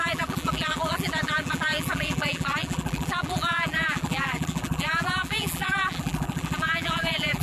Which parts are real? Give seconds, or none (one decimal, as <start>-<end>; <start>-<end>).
none